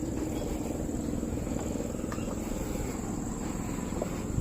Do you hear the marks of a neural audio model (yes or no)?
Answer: no